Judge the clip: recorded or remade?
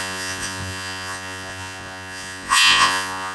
remade